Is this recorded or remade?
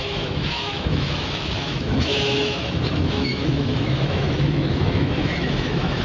remade